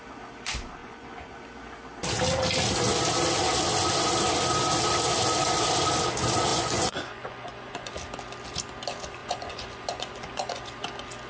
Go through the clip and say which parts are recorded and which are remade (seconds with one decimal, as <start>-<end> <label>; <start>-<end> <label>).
0.0-0.8 recorded; 0.8-1.4 remade; 1.4-6.5 recorded; 6.5-7.9 remade; 7.9-9.2 recorded; 9.2-10.6 remade; 10.6-11.3 recorded